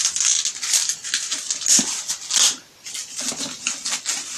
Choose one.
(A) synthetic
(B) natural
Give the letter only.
B